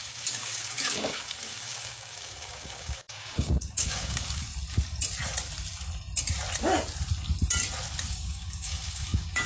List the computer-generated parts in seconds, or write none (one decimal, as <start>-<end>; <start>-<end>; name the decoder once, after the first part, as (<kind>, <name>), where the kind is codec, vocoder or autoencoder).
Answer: 0.0-4.5 (codec, DAC); 8.1-9.5